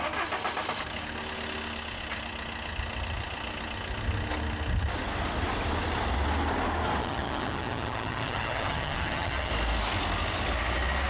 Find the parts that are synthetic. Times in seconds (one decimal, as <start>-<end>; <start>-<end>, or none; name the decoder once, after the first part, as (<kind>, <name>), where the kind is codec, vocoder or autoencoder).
7.0-9.5 (vocoder, HiFi-GAN)